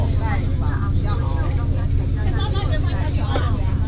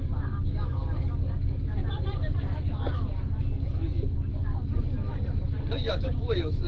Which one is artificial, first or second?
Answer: second